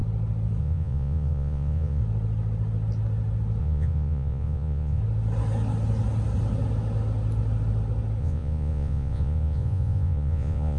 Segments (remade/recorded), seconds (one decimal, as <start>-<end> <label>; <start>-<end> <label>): 0.0-0.6 recorded; 0.6-2.0 remade; 2.0-3.6 recorded; 3.6-5.0 remade; 5.0-8.2 recorded; 8.2-10.8 remade